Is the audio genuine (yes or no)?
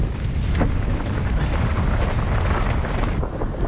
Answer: yes